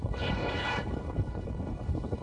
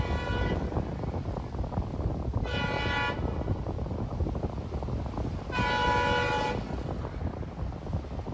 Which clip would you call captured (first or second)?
second